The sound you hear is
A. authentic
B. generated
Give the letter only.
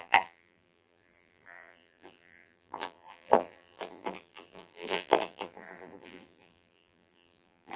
B